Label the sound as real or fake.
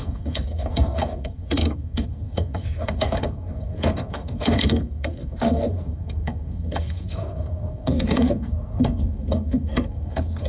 fake